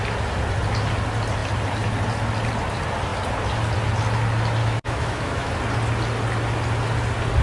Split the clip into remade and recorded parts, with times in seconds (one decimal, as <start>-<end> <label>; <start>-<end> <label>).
0.0-4.6 recorded; 4.6-5.5 remade; 5.5-7.4 recorded